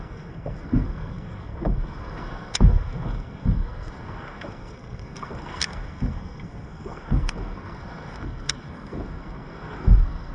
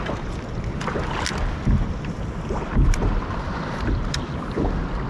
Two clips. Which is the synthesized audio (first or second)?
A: first